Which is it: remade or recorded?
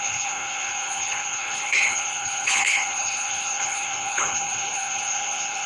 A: remade